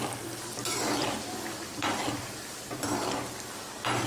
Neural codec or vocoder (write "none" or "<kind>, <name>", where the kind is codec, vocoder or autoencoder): vocoder, BigVGAN v2